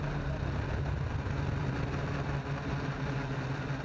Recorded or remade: recorded